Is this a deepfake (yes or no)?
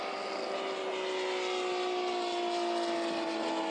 no